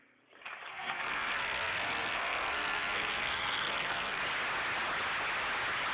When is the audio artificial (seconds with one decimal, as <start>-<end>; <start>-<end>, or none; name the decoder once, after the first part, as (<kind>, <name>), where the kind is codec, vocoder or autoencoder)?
0.7-4.2 (codec, SNAC)